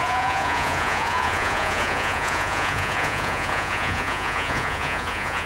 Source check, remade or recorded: remade